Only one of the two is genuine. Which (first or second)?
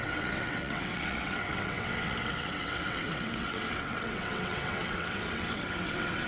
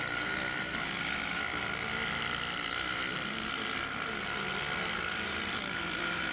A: second